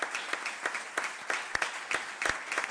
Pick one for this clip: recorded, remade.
recorded